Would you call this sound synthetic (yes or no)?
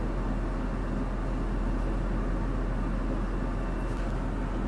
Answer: no